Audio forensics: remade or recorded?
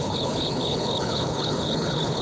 remade